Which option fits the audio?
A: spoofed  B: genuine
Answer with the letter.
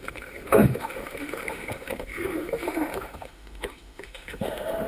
A